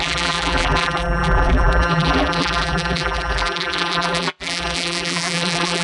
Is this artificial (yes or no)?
yes